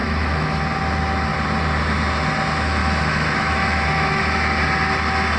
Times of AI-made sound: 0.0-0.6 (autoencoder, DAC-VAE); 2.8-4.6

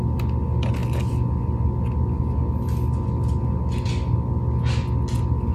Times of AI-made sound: none

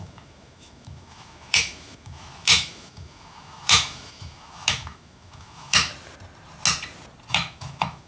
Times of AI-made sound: 0.0-5.9 (autoencoder, DAC-VAE); 7.3-8.1

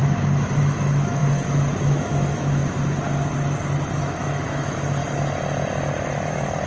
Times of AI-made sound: 0.6-1.2 (autoencoder, DAC-VAE); 1.8-2.6; 4.0-5.0; 6.0-6.7

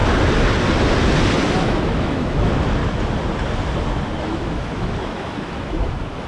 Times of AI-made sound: 1.6-2.8 (autoencoder, DAC-VAE); 4.2-6.3

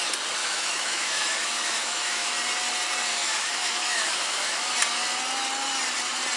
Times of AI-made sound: 0.4-2.3 (autoencoder, DAC-VAE); 3.1-4.7